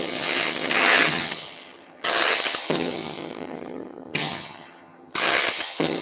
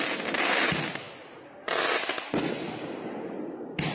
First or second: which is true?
second